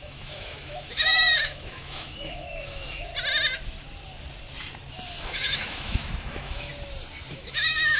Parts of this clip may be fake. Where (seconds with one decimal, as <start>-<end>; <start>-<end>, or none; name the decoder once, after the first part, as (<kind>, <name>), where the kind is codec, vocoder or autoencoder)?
0.0-3.1 (autoencoder, DAC-VAE); 5.2-6.7; 7.3-8.0